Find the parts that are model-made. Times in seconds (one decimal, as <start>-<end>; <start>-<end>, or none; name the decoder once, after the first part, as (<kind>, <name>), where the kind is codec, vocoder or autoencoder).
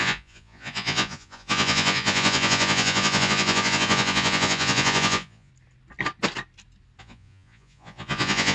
0.0-5.5 (vocoder, Vocos); 7.0-8.5